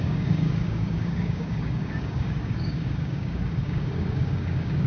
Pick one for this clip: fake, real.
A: fake